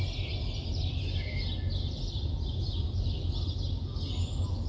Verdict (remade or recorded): recorded